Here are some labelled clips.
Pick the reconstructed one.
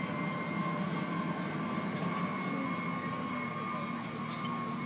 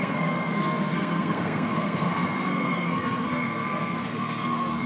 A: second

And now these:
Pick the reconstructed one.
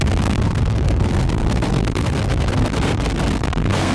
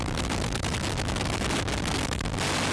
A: first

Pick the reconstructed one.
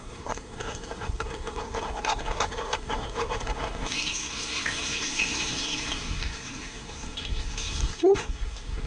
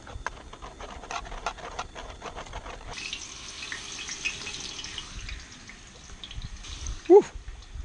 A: first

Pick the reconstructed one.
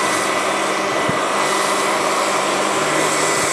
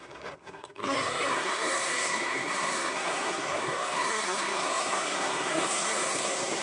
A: second